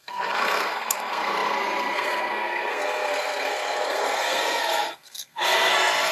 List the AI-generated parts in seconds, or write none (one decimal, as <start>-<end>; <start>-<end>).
0.0-6.1